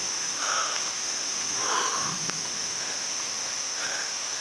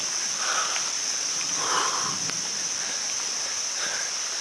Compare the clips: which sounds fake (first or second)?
first